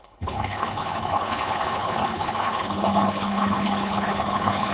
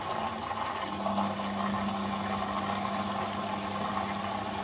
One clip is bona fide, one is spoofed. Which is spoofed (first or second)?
first